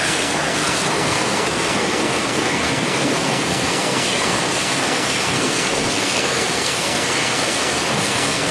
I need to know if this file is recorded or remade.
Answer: remade